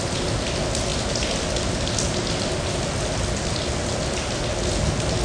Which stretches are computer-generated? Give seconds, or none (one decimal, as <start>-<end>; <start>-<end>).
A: none